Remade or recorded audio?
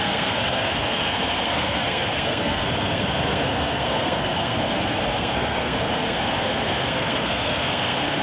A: remade